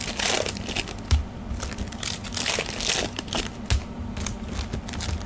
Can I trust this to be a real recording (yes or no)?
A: yes